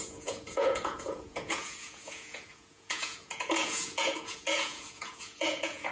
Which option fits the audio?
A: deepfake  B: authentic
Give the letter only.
A